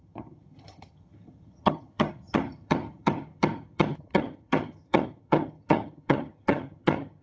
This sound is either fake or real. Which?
fake